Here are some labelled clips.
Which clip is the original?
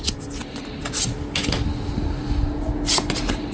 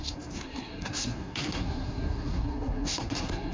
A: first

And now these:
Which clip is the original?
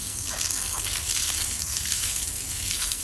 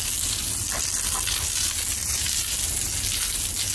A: second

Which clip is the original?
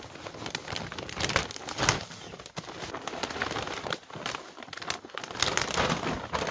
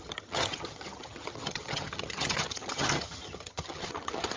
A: first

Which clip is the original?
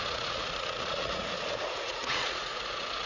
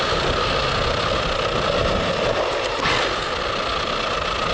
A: second